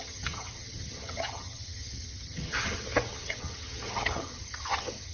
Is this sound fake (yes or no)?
yes